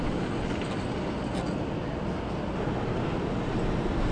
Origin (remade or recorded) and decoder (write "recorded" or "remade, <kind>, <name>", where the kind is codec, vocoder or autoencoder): recorded